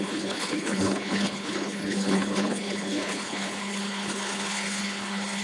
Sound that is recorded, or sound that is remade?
remade